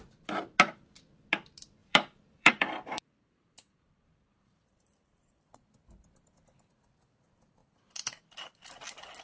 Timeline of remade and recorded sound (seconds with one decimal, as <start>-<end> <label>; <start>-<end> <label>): 0.0-1.8 recorded; 1.8-5.4 remade; 5.4-9.2 recorded